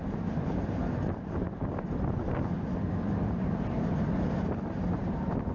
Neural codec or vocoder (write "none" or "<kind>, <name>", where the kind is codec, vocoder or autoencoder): none